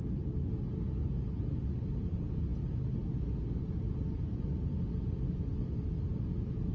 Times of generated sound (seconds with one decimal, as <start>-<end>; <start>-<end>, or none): none